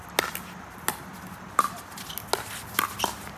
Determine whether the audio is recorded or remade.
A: recorded